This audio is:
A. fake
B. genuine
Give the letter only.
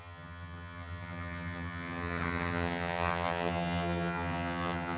A